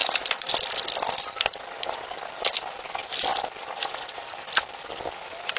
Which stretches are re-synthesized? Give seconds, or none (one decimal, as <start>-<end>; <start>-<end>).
none